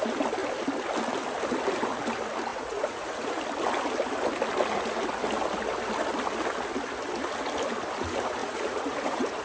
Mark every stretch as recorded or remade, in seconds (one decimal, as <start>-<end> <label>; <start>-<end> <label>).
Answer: 0.0-2.5 recorded; 2.5-3.4 remade; 3.4-8.4 recorded; 8.4-9.4 remade